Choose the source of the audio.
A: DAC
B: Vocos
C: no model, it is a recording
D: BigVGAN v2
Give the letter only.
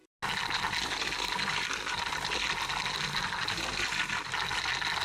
C